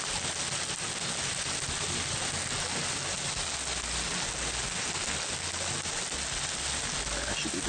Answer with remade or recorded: recorded